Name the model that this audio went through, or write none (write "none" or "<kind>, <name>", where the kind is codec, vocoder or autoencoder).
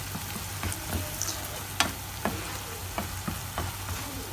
none